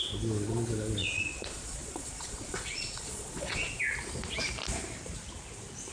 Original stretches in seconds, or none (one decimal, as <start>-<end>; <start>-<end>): 0.0-1.0; 3.8-5.9